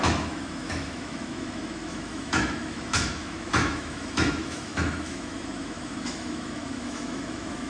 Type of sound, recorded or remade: remade